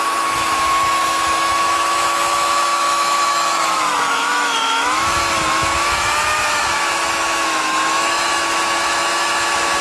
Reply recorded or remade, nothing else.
remade